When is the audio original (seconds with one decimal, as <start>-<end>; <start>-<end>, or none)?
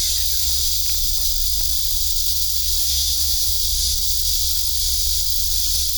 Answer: 0.0-2.8; 3.5-6.0